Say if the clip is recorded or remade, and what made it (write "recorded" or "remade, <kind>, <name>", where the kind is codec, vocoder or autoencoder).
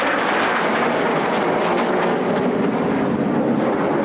recorded